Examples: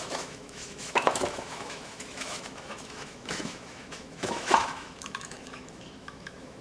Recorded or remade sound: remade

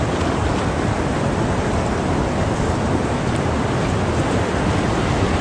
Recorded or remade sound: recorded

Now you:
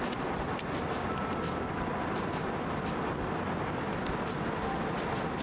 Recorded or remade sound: recorded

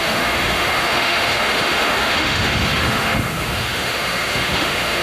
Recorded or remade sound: remade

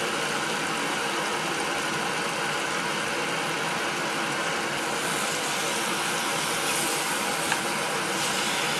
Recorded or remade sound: recorded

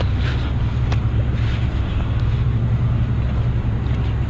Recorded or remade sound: recorded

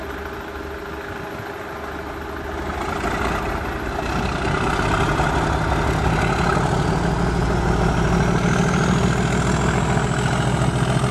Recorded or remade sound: recorded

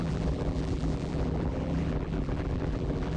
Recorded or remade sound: remade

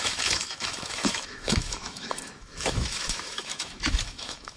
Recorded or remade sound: remade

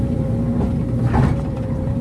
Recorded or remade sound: remade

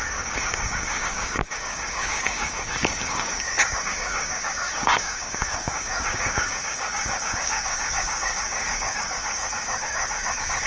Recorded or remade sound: remade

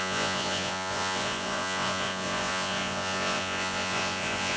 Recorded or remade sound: remade